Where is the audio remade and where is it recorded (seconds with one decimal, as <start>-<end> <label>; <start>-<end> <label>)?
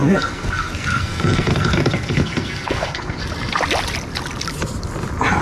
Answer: 0.0-3.2 remade; 3.2-5.4 recorded